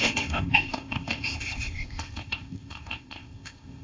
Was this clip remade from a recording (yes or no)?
yes